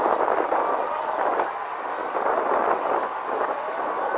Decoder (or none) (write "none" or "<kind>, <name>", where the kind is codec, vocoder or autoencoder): none